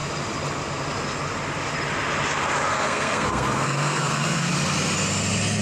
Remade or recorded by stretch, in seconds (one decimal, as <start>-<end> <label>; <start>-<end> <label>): 0.0-2.7 recorded; 2.7-4.5 remade; 4.5-5.6 recorded